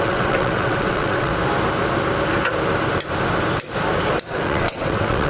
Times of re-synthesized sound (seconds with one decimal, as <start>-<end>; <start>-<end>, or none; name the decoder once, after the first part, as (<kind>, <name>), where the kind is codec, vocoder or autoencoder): 0.0-1.3 (vocoder, WaveNeXt); 4.2-5.3